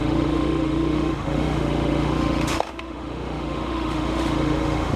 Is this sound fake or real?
fake